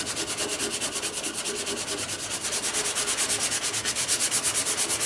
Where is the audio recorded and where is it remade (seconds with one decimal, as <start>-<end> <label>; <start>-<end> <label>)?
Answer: 0.0-5.1 recorded